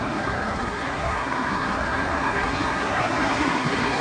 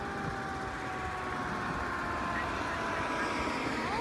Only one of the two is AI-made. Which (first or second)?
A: first